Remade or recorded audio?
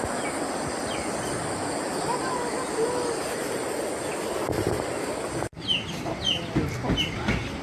recorded